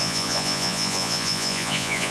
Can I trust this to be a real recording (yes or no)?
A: no